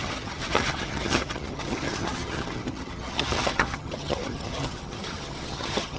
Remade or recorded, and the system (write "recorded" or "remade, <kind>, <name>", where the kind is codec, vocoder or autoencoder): remade, vocoder, HiFi-GAN